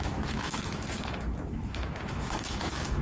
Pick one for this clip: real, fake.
fake